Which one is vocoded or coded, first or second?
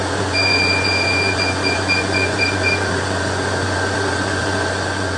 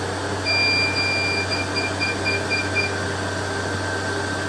first